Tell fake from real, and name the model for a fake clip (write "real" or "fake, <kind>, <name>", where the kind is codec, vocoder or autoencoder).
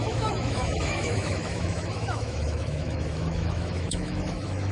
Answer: fake, autoencoder, DAC-VAE